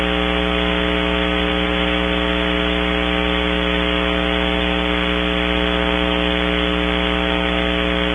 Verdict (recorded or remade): recorded